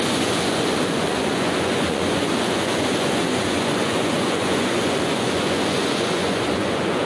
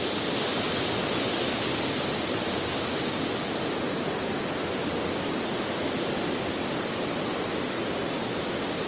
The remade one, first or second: first